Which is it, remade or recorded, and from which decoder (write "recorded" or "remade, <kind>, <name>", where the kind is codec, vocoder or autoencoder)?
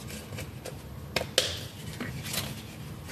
recorded